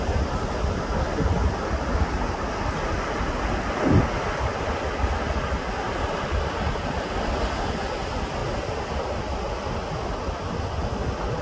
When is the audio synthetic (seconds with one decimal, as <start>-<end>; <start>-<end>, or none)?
8.4-9.1